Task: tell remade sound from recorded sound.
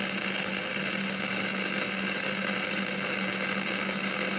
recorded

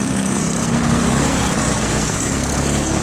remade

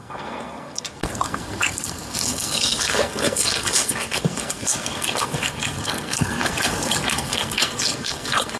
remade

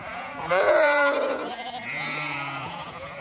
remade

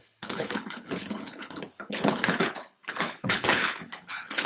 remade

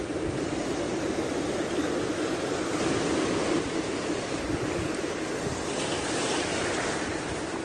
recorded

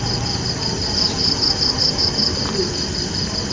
recorded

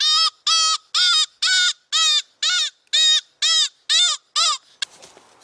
recorded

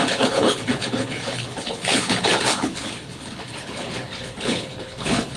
remade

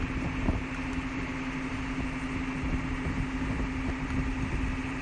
recorded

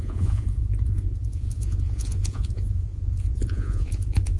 remade